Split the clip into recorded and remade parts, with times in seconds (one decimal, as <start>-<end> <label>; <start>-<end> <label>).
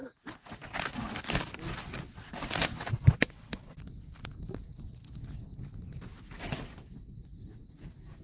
0.0-8.2 recorded